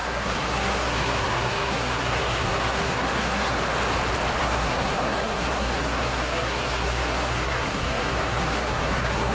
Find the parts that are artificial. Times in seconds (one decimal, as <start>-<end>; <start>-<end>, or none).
0.0-3.6; 4.4-9.3